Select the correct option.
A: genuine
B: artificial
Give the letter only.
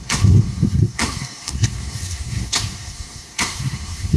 B